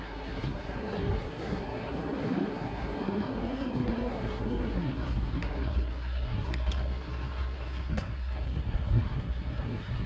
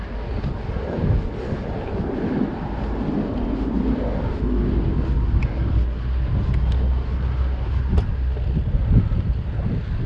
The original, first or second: second